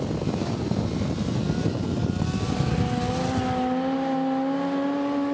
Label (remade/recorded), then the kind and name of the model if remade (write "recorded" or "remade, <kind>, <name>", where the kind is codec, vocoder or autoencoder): recorded